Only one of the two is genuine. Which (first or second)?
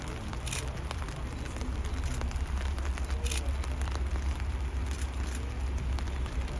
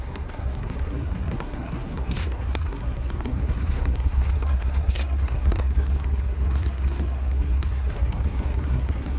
first